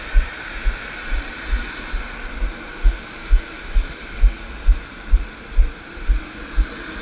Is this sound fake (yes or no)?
no